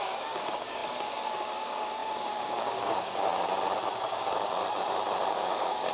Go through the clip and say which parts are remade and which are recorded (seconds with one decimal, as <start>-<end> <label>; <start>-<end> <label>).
0.0-3.3 remade; 3.3-3.9 recorded; 3.9-4.6 remade; 4.6-5.3 recorded; 5.3-5.9 remade